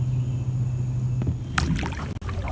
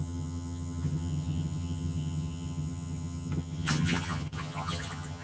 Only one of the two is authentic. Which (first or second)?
first